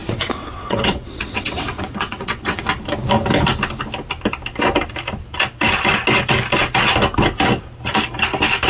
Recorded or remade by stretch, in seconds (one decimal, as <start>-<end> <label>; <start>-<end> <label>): 0.0-2.6 remade; 2.6-8.7 recorded

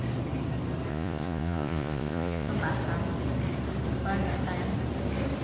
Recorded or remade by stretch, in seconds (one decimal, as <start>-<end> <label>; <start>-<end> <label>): 0.0-0.9 recorded; 0.9-2.5 remade; 2.5-5.4 recorded